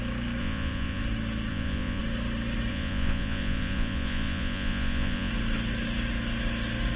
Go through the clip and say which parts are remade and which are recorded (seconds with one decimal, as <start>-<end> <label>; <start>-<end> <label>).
0.0-0.4 recorded; 0.4-1.0 remade; 1.0-1.5 recorded; 1.5-2.0 remade; 2.0-2.7 recorded; 2.7-5.3 remade; 5.3-7.0 recorded